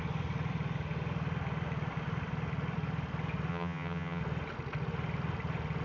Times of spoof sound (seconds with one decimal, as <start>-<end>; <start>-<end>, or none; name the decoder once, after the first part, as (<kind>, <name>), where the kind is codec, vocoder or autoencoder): 3.5-4.2 (vocoder, HiFi-GAN)